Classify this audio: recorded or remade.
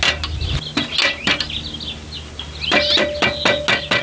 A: recorded